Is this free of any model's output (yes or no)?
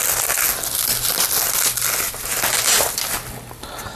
yes